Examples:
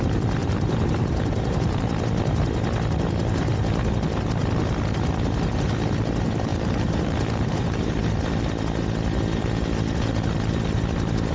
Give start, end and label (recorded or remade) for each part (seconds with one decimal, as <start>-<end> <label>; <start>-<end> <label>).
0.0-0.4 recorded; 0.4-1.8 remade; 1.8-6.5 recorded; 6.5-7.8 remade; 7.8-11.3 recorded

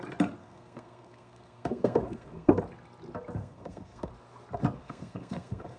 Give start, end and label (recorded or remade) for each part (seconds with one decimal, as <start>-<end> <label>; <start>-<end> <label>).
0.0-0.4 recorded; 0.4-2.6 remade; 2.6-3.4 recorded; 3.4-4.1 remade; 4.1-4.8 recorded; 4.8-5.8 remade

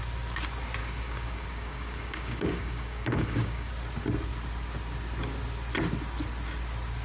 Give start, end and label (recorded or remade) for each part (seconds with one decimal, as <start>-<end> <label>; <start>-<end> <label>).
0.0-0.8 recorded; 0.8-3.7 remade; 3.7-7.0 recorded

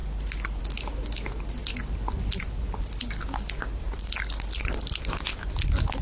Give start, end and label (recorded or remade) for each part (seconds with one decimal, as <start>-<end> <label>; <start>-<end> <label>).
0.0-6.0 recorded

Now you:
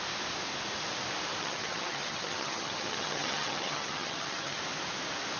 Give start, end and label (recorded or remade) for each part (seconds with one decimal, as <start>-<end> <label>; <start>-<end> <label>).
0.0-1.4 recorded; 1.4-4.6 remade; 4.6-5.4 recorded

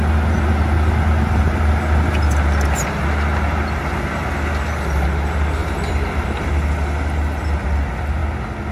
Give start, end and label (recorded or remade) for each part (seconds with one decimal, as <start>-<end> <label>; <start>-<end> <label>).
0.0-5.6 recorded; 5.6-6.5 remade; 6.5-8.7 recorded